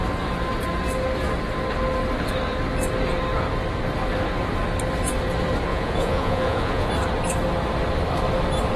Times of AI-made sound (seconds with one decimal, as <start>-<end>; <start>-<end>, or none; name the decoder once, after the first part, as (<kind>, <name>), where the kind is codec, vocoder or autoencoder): 5.7-6.9 (vocoder, Vocos)